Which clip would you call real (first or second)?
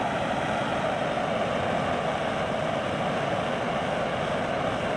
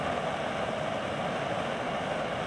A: first